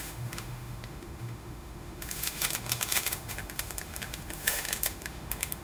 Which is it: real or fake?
fake